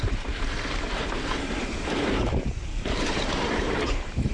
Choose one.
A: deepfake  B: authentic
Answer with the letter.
A